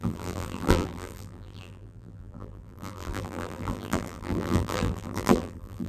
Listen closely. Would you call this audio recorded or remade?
remade